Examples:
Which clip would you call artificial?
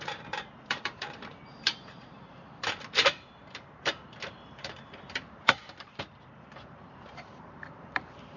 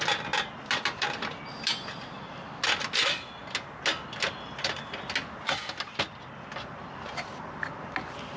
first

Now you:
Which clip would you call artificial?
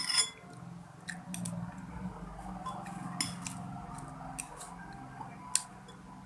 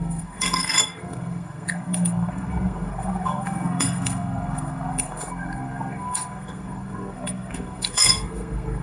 second